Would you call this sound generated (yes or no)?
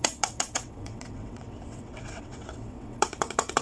yes